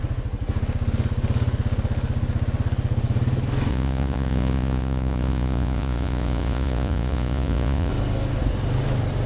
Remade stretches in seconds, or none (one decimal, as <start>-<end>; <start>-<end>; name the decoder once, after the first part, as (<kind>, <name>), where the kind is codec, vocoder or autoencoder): 3.7-7.9 (vocoder, Vocos)